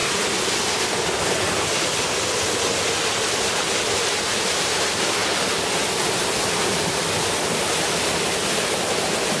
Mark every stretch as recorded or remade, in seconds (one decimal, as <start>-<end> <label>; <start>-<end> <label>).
0.0-9.4 recorded